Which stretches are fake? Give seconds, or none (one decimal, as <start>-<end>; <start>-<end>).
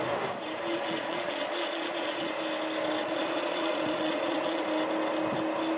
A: 0.7-2.3; 3.0-4.6